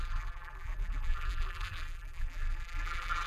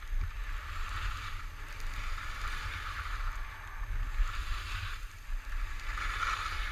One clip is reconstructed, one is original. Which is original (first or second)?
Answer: second